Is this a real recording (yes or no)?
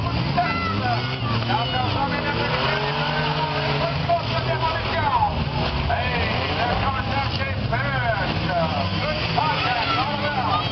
yes